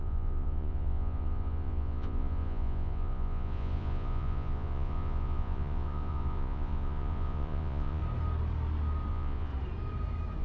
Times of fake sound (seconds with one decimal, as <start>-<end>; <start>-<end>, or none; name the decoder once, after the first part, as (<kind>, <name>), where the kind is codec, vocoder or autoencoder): 0.0-8.0 (vocoder, Vocos); 9.1-9.5